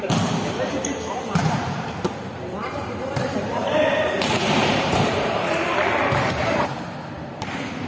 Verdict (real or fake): fake